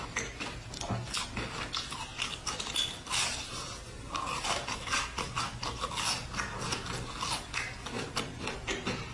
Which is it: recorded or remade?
recorded